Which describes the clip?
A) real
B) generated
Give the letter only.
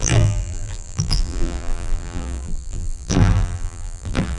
B